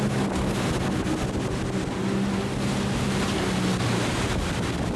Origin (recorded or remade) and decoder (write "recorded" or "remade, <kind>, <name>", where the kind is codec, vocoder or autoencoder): recorded